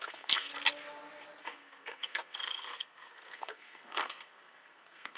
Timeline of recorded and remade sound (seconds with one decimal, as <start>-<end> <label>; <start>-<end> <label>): 0.0-0.5 remade; 0.5-1.4 recorded; 1.4-5.2 remade